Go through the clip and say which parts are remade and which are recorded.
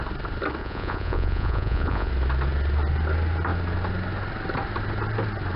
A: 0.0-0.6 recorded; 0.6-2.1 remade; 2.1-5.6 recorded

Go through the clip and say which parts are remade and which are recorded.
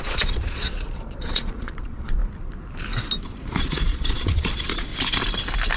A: 0.0-2.2 remade; 2.2-3.4 recorded; 3.4-4.9 remade; 4.9-5.8 recorded